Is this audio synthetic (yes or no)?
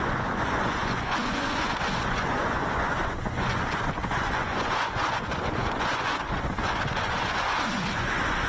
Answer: yes